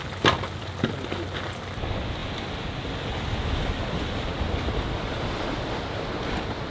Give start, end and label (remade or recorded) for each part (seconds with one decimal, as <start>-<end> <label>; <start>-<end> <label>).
0.0-2.2 recorded; 2.2-4.9 remade; 4.9-6.7 recorded